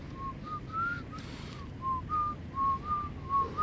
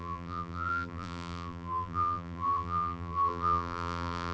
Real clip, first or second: first